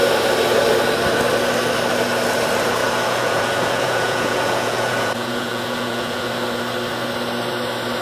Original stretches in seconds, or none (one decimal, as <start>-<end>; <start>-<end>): 0.0-2.8; 6.3-8.0